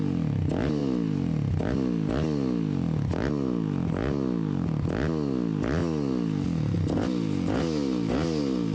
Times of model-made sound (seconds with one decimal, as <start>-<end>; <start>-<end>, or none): none